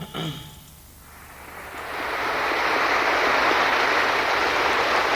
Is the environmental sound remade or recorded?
recorded